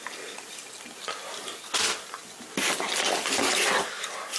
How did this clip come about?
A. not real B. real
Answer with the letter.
B